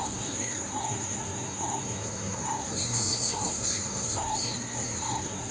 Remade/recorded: remade